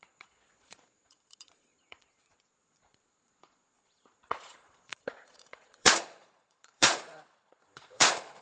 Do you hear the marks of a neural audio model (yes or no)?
yes